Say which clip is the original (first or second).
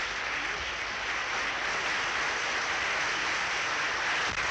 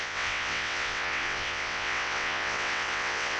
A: first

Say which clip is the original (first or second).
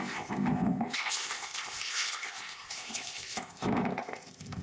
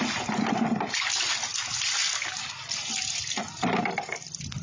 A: second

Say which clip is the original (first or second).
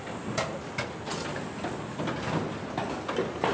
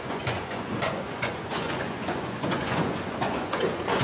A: first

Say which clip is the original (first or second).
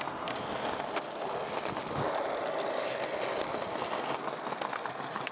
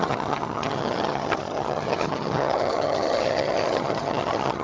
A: first